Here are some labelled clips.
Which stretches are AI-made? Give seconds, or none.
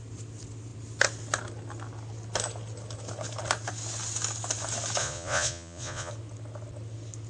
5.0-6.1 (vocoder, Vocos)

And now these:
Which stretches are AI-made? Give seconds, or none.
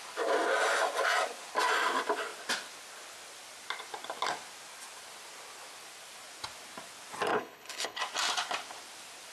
7.3-8.0 (codec, HILCodec)